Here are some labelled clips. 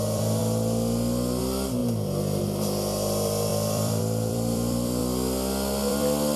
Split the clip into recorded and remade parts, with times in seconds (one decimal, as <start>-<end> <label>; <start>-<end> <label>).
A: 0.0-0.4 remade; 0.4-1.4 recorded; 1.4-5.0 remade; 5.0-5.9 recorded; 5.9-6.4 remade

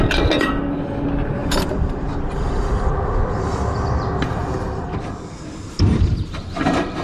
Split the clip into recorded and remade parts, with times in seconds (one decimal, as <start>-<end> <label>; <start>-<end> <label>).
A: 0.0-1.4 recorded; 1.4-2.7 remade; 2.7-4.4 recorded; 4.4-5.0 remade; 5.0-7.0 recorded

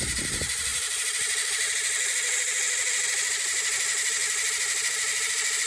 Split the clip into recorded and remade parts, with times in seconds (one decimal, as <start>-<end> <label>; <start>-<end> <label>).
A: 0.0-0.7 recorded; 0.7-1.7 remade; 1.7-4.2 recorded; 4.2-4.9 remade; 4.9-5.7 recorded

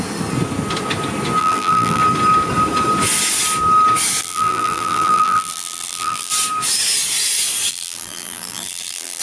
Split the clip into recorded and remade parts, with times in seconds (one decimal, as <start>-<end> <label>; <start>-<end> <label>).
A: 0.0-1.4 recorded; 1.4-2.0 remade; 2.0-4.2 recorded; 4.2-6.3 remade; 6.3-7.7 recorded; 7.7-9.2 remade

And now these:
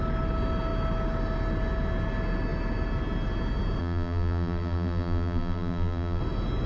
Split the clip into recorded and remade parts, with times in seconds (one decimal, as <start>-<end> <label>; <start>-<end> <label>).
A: 0.0-3.8 recorded; 3.8-6.2 remade; 6.2-6.7 recorded

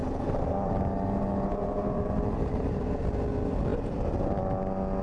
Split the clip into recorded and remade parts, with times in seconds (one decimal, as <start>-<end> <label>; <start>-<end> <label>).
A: 0.0-3.0 remade; 3.0-5.0 recorded